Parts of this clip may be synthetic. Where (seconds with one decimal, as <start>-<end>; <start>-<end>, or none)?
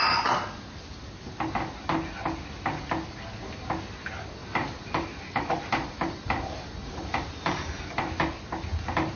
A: 4.4-8.2